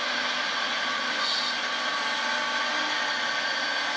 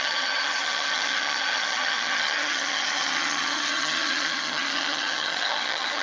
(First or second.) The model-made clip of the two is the second